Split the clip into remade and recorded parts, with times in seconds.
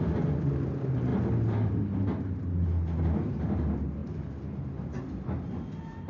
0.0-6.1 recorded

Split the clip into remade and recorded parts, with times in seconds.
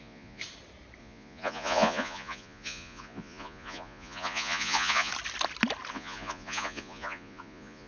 0.0-0.4 remade; 0.4-1.0 recorded; 1.0-5.1 remade; 5.1-5.9 recorded; 5.9-7.9 remade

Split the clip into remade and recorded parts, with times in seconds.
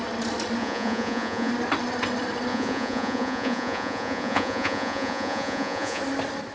0.0-0.6 recorded; 0.6-1.5 remade; 1.5-2.5 recorded; 2.5-6.0 remade; 6.0-6.5 recorded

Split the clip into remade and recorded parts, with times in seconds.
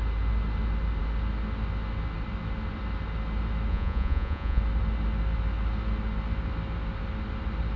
0.0-3.7 recorded; 3.7-4.6 remade; 4.6-7.8 recorded